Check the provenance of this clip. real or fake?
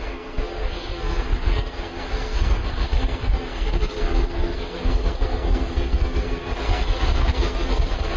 fake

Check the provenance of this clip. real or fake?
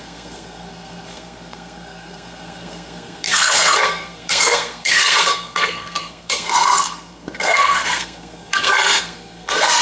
fake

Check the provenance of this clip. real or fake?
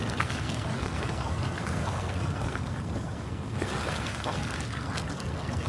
fake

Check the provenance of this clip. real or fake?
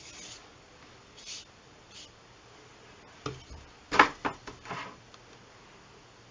real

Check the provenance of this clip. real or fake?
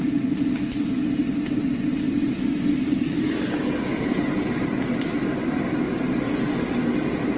real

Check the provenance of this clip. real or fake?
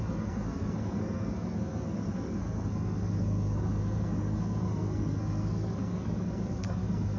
fake